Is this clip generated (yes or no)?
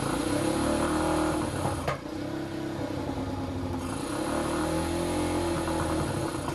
no